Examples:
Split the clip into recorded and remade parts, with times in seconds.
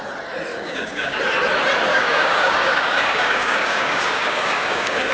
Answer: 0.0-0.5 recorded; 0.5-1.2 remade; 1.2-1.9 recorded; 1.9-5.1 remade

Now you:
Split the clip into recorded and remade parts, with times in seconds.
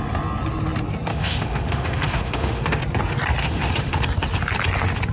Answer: 0.0-1.1 recorded; 1.1-2.8 remade; 2.8-3.4 recorded; 3.4-4.0 remade; 4.0-5.1 recorded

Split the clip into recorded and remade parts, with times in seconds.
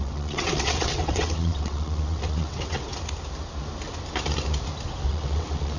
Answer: 0.0-2.9 remade; 2.9-5.1 recorded; 5.1-5.8 remade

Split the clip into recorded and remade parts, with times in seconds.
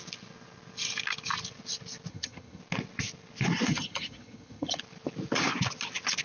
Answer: 0.0-2.1 recorded; 2.1-2.6 remade; 2.6-3.7 recorded; 3.7-4.8 remade; 4.8-6.2 recorded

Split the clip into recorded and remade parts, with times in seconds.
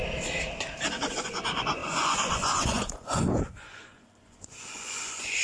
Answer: 0.0-1.1 recorded; 1.1-5.4 remade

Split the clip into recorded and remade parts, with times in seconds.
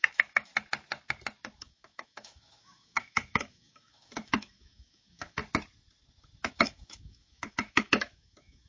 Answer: 0.0-0.5 remade; 0.5-1.6 recorded; 1.6-5.4 remade; 5.4-6.4 recorded; 6.4-8.7 remade